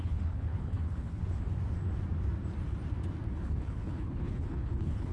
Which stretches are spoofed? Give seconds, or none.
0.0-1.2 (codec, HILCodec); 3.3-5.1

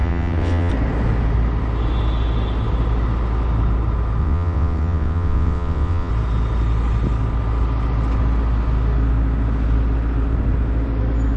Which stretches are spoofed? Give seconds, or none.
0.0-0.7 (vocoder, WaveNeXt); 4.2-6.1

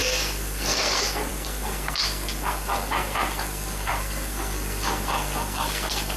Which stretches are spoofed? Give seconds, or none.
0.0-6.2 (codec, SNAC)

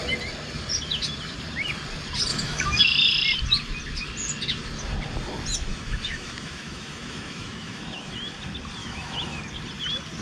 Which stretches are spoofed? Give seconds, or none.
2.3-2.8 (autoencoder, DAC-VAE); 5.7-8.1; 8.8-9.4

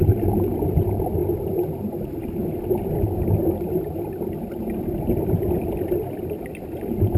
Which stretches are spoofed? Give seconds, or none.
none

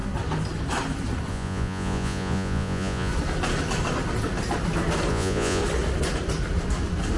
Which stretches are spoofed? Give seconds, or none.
1.3-3.1 (vocoder, Vocos); 5.1-5.6